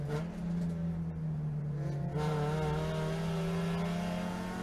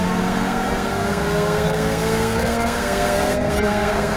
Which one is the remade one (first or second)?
second